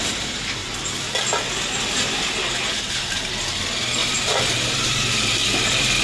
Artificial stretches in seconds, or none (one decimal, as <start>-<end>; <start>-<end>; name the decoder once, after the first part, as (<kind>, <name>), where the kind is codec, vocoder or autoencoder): 4.0-5.1 (vocoder, BigVGAN v2)